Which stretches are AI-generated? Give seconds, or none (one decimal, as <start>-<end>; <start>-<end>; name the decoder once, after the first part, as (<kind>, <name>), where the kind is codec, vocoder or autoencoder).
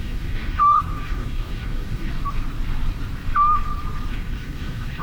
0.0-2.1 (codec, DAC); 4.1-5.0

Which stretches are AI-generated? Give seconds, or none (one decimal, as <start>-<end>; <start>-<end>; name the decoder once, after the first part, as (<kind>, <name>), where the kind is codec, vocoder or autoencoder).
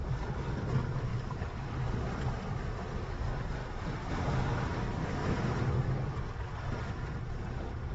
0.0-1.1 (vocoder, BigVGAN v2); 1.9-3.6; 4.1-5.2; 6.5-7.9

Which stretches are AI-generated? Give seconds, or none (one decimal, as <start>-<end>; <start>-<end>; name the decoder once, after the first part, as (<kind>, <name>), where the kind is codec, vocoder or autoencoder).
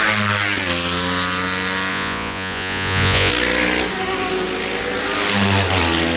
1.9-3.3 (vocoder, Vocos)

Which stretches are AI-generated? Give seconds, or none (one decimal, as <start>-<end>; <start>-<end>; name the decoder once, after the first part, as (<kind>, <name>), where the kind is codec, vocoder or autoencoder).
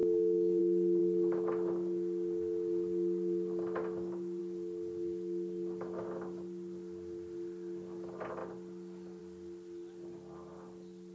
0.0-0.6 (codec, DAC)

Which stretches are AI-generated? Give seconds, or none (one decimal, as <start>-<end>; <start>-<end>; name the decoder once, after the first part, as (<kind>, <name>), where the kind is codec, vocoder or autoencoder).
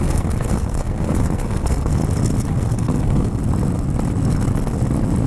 0.0-2.0 (codec, SNAC); 2.5-3.4